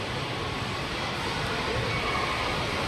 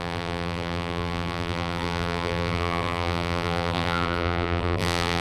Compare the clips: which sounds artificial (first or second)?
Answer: second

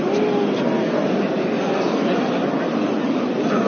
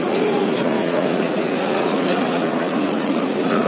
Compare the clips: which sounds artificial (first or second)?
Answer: second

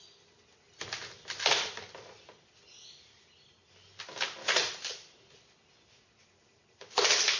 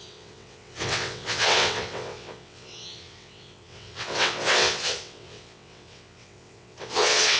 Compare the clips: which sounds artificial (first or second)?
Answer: second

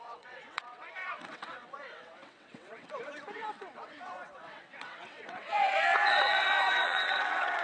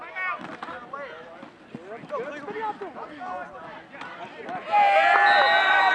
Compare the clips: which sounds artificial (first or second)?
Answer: first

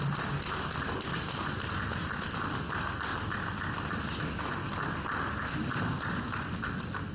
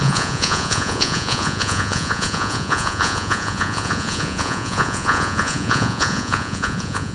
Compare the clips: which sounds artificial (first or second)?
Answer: second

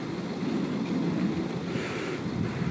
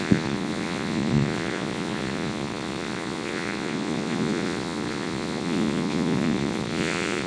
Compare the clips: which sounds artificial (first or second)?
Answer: second